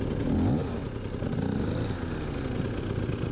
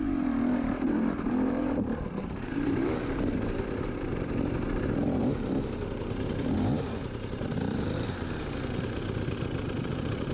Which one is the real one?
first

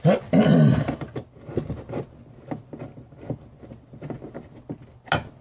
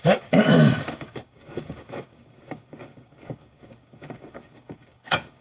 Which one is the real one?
first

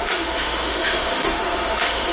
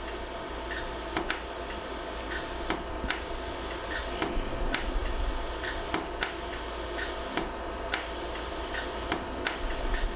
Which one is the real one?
second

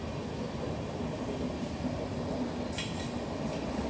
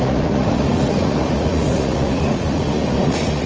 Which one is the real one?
first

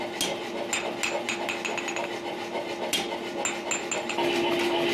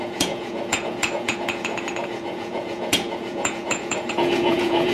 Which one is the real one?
first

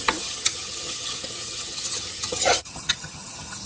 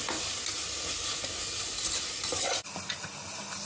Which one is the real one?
second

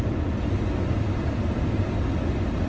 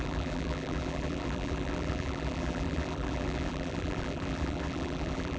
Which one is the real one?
first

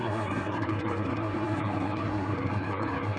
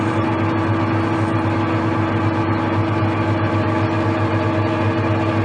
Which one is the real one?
second